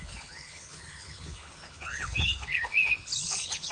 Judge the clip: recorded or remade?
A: remade